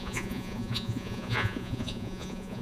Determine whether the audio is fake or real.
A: fake